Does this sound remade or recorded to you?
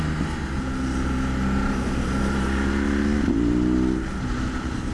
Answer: recorded